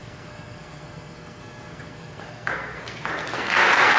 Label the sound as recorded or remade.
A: remade